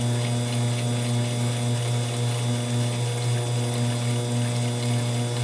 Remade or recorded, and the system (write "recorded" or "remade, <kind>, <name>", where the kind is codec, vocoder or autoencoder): recorded